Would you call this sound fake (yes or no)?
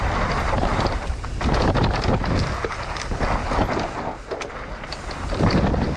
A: no